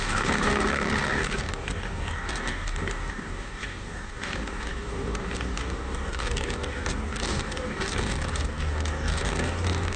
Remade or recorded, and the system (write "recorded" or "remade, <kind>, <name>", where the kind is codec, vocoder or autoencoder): remade, codec, DAC